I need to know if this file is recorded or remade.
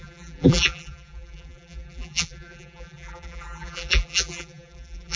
remade